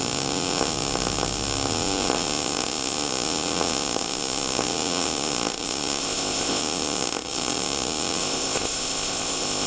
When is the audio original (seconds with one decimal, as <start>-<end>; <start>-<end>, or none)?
0.0-6.0; 6.6-8.2